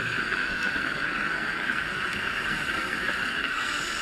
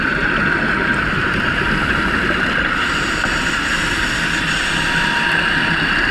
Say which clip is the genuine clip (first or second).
second